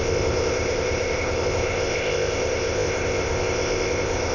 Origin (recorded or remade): remade